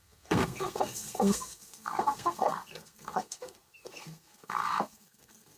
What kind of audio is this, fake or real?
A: fake